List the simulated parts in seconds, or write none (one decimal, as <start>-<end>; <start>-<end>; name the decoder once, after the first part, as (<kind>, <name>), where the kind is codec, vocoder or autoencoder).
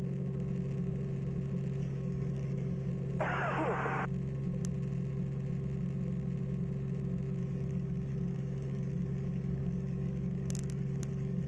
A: 1.8-2.9 (codec, DAC); 7.4-11.5